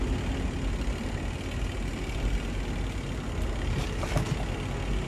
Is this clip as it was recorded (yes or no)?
yes